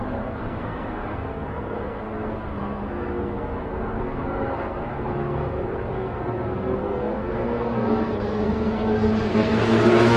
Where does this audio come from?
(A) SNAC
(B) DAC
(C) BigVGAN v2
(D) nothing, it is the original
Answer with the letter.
A